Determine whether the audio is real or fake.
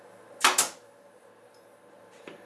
real